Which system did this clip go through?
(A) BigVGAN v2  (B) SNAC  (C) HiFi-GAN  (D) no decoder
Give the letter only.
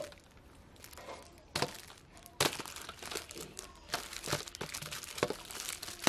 D